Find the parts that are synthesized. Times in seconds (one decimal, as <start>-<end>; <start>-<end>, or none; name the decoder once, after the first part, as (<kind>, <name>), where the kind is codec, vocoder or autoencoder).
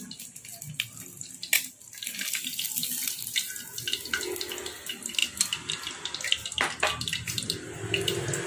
none